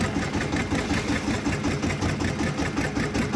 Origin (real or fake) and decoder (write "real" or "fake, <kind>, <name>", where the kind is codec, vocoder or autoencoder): real